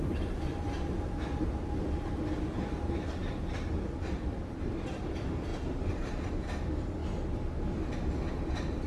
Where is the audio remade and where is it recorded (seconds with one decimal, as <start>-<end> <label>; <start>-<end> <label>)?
0.0-8.9 recorded